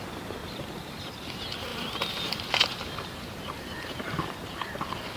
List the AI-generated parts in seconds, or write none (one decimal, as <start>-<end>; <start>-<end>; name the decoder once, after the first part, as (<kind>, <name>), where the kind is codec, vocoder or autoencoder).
0.4-1.2 (vocoder, BigVGAN v2); 1.7-4.8